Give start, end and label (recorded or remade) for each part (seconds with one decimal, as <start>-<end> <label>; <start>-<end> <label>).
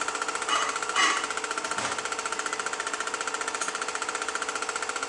0.0-5.1 recorded